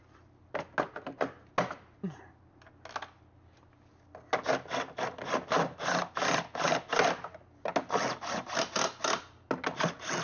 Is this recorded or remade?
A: recorded